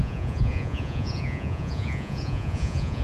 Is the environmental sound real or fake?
fake